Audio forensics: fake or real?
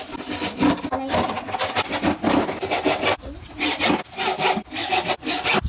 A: real